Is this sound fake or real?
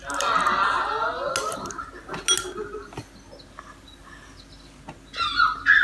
real